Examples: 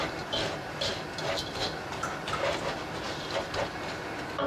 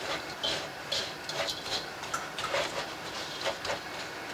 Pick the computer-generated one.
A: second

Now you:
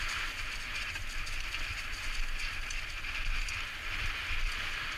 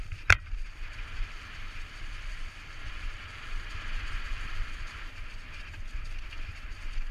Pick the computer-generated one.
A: second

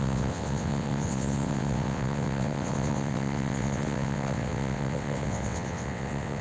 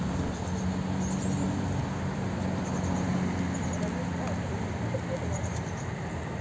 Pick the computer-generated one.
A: first